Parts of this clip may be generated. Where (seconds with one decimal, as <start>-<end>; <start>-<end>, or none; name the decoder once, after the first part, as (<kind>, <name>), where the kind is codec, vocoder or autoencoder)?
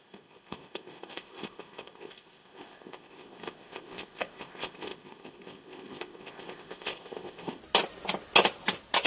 0.0-7.6 (codec, ZipCodec)